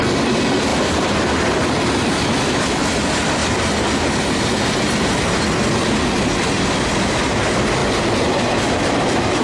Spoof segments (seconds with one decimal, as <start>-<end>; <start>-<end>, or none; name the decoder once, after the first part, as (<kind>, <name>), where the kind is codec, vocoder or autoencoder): none